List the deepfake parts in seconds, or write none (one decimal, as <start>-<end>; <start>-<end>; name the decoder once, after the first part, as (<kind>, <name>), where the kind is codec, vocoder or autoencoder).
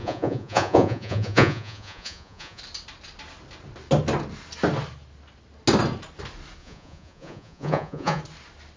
0.0-2.6 (vocoder, Vocos); 6.6-8.2